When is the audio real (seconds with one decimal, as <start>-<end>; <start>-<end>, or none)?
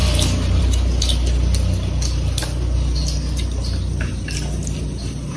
0.0-5.4